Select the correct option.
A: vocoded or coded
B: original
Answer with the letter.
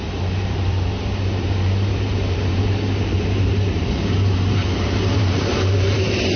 A